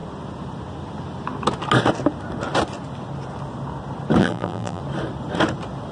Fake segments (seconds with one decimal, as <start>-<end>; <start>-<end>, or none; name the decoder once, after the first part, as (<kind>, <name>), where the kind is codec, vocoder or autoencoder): 4.2-4.8 (vocoder, BigVGAN v2)